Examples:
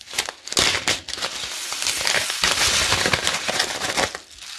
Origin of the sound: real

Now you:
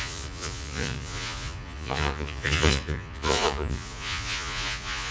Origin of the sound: fake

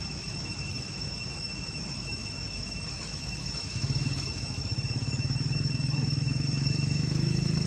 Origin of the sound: fake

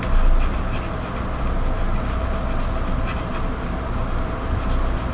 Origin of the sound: real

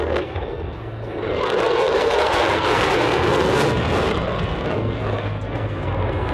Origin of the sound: fake